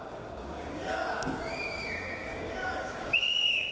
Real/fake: fake